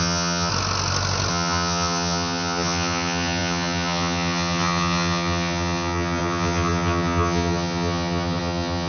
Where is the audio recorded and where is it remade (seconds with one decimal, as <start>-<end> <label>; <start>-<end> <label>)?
0.0-0.5 remade; 0.5-1.3 recorded; 1.3-8.9 remade